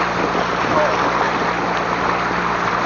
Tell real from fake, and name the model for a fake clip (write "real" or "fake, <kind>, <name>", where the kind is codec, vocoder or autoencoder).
real